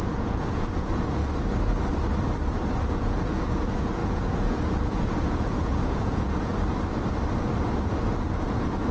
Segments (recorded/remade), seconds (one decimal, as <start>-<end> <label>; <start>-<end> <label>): 0.0-1.2 remade; 1.2-2.9 recorded; 2.9-6.5 remade; 6.5-7.9 recorded; 7.9-8.9 remade